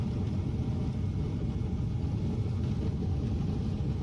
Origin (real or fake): fake